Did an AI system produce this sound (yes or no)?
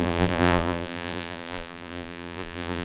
yes